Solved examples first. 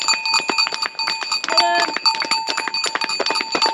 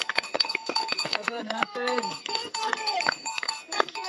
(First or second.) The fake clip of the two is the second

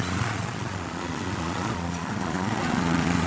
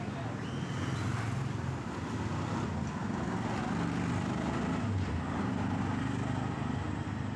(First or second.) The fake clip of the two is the first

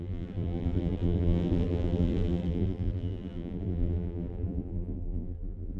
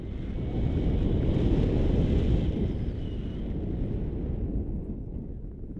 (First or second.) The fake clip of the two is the first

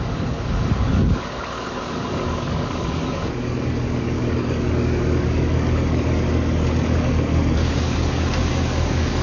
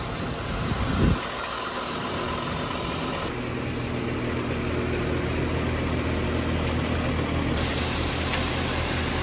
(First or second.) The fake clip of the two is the first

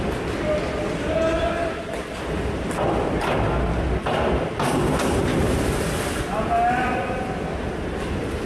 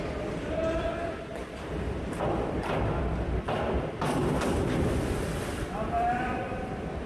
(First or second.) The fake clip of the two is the second